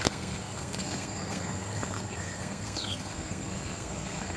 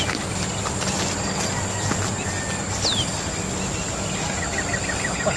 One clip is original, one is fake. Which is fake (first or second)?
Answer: first